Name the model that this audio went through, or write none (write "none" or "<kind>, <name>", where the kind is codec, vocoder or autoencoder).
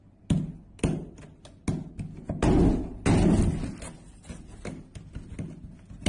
none